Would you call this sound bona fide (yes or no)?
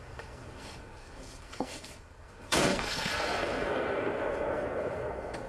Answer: no